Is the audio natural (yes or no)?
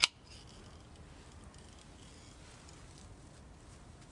yes